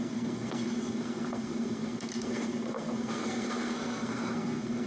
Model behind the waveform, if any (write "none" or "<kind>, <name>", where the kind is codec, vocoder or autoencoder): codec, SNAC